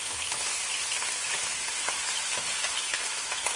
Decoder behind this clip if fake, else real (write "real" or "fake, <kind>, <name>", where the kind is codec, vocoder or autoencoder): fake, autoencoder, DAC-VAE